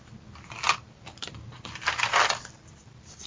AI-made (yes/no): no